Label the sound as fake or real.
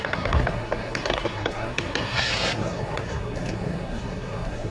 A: fake